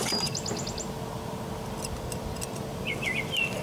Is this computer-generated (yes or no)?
no